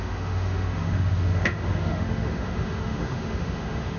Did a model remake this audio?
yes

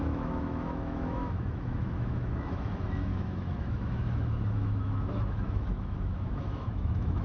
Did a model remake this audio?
yes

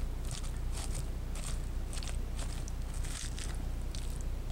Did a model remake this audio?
no